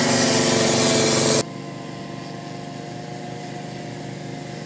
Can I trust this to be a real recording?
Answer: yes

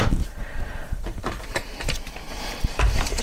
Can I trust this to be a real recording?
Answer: no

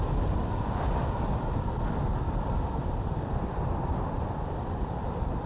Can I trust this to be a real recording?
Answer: yes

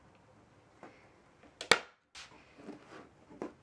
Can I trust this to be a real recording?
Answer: yes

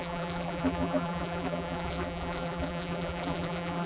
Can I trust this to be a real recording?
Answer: no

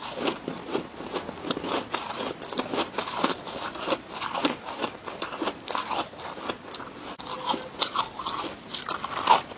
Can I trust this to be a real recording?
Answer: yes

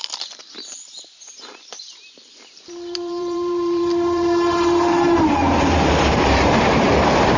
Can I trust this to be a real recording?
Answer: no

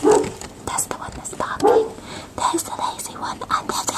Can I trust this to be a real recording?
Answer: no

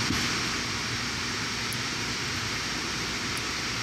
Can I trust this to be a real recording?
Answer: yes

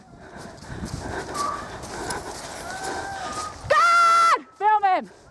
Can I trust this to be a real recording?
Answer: yes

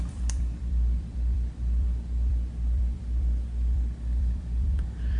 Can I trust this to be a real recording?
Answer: no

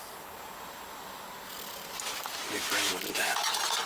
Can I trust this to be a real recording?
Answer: yes